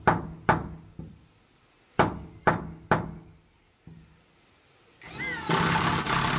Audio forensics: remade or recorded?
recorded